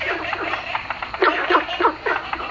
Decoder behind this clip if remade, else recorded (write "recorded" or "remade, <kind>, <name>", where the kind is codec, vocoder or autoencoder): recorded